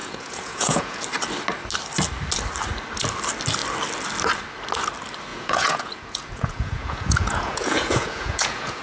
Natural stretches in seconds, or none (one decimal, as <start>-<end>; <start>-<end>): 1.0-5.3